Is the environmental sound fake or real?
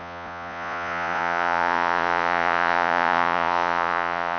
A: fake